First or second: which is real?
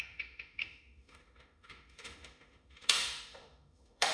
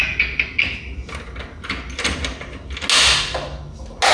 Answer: second